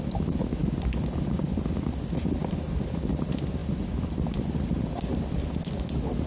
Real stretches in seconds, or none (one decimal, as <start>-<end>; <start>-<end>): 0.0-6.3